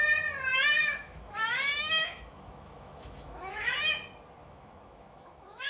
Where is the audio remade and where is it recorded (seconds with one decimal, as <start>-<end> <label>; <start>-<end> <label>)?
0.0-0.5 recorded; 0.5-3.9 remade; 3.9-4.4 recorded; 4.4-5.7 remade